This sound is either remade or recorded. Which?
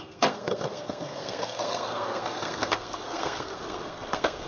remade